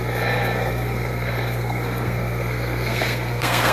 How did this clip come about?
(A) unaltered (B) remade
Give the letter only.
B